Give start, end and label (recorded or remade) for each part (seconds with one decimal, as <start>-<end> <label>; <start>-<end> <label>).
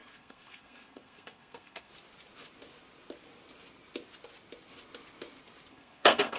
0.0-1.9 remade; 1.9-5.7 recorded; 5.7-6.4 remade